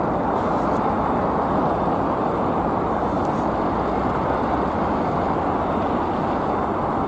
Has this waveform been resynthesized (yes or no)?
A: no